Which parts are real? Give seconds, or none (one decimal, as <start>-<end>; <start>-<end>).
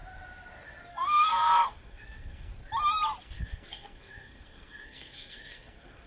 0.0-0.9; 2.5-3.2